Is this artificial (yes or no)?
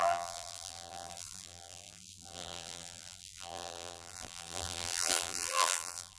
yes